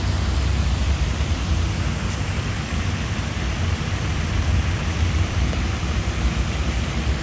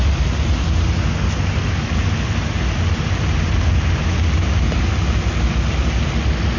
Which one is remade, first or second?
first